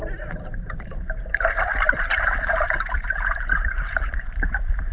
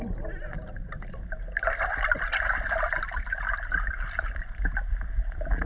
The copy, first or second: first